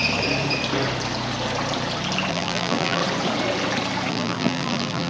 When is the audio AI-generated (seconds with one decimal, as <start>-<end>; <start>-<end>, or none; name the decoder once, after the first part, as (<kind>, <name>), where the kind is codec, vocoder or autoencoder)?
2.3-3.0 (vocoder, BigVGAN v2); 4.1-5.1